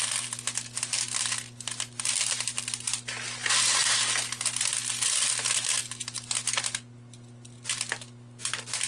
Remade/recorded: recorded